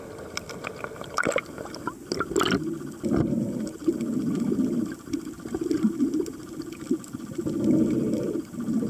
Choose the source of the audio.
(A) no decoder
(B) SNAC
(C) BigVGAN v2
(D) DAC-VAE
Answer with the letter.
A